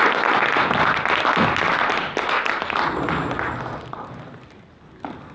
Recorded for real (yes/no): yes